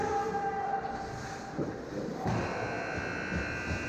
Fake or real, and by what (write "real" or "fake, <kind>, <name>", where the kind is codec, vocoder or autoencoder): real